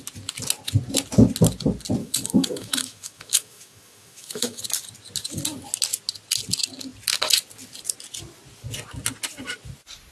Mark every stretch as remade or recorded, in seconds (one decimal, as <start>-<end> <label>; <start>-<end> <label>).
0.0-2.0 recorded; 2.0-4.6 remade; 4.6-10.1 recorded